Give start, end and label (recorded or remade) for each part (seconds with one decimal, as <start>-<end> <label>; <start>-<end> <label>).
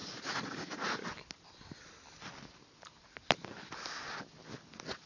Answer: 0.0-0.9 remade; 0.9-5.1 recorded